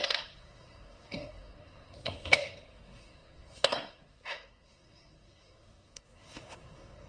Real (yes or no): no